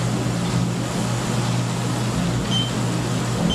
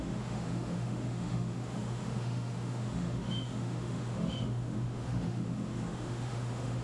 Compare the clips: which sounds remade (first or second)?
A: second